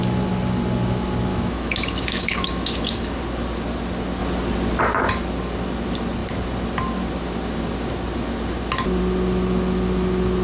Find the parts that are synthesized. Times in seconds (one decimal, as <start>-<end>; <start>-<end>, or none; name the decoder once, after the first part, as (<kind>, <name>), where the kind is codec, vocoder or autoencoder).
1.3-3.2 (autoencoder, DAC-VAE)